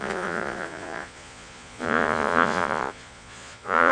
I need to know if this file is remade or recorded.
remade